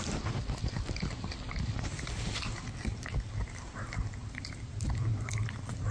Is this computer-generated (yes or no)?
no